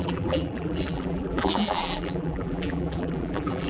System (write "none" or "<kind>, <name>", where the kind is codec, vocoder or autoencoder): vocoder, BigVGAN v2